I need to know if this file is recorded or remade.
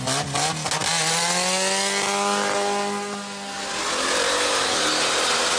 recorded